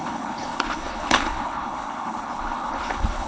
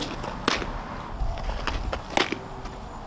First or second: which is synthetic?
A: first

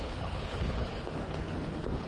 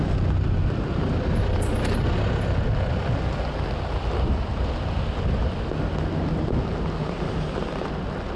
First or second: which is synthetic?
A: first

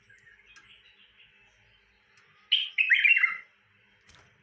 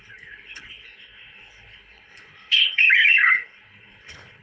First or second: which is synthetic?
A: second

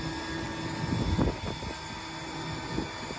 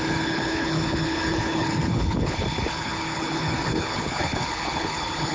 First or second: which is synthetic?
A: second